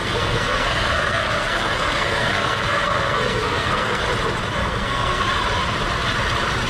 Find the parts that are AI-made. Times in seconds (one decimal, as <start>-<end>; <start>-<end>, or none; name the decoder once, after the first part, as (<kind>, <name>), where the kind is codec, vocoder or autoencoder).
0.0-4.0 (codec, SNAC); 4.6-5.2